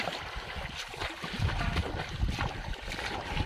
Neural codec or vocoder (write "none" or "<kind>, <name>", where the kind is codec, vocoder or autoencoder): none